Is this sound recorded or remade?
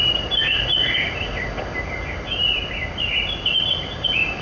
recorded